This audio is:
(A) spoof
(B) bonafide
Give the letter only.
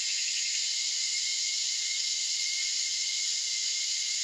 A